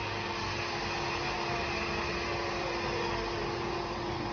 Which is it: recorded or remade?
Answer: recorded